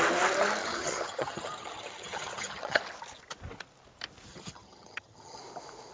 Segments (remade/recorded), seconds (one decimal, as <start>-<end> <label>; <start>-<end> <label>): 0.0-0.6 recorded; 0.6-2.8 remade; 2.8-4.3 recorded; 4.3-5.4 remade; 5.4-5.9 recorded